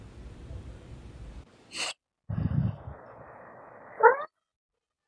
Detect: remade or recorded recorded